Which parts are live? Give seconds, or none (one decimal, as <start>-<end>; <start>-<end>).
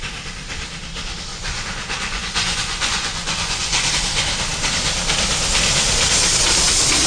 0.0-1.3; 3.9-7.1